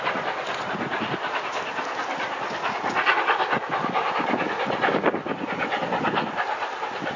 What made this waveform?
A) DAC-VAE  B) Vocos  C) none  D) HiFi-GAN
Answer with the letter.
C